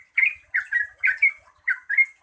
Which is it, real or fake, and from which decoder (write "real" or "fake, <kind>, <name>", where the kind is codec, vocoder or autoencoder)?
real